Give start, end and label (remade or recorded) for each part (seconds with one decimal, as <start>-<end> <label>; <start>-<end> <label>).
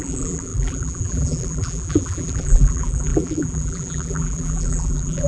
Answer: 0.0-5.3 remade